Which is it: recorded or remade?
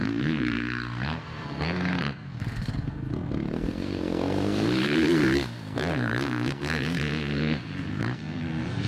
remade